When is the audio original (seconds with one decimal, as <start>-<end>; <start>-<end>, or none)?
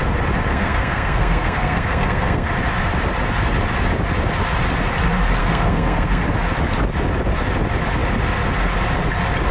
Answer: 0.0-0.5; 2.5-5.4; 6.2-9.5